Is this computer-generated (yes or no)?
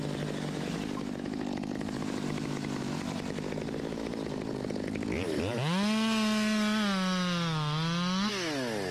no